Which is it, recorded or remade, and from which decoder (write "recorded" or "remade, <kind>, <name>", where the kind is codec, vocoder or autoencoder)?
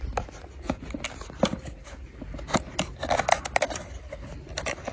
recorded